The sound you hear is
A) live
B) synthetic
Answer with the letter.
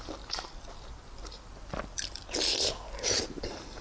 A